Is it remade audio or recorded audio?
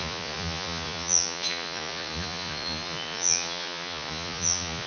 remade